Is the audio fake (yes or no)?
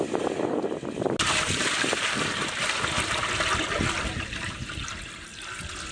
no